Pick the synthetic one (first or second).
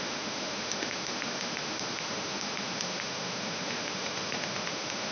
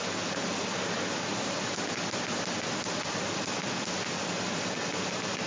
first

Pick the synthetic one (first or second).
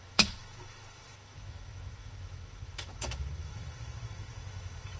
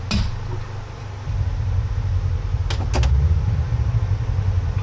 first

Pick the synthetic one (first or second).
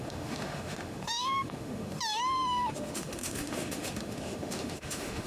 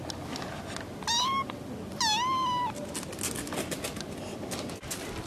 first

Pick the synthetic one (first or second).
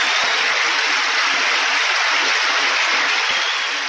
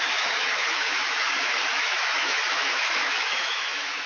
second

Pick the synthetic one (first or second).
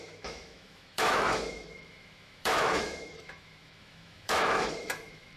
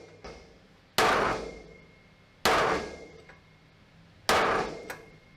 first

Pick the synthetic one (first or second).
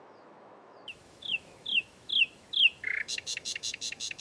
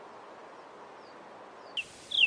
first